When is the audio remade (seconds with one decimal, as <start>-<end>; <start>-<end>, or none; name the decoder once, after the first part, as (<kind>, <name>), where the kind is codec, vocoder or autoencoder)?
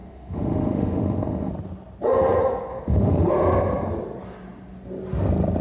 0.0-1.5 (autoencoder, DAC-VAE); 2.7-3.3